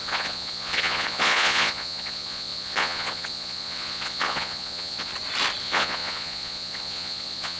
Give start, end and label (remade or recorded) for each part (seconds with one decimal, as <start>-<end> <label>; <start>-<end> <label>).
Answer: 0.0-5.1 remade; 5.1-5.6 recorded; 5.6-7.6 remade